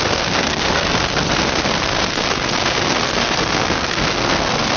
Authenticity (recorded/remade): remade